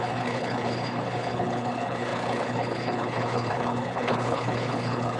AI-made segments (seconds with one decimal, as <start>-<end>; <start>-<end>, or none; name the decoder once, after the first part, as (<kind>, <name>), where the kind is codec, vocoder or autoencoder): 0.0-5.2 (codec, HILCodec)